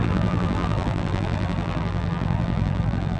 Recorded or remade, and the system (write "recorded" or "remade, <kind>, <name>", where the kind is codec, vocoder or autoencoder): remade, vocoder, BigVGAN v2